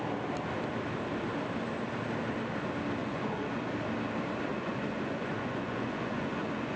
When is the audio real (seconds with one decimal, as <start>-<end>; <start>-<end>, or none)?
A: 0.0-3.0; 3.6-4.5